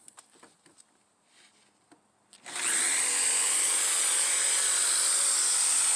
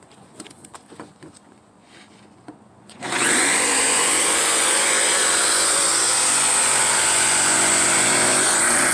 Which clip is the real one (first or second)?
first